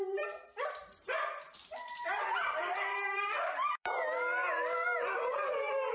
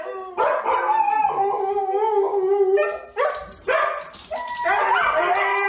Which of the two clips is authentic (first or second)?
second